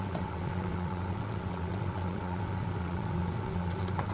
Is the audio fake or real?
fake